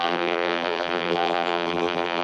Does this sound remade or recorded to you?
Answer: remade